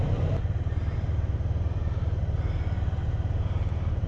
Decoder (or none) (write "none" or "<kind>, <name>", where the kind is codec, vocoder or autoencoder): none